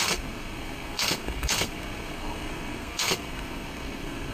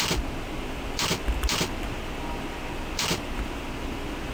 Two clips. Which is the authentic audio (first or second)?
second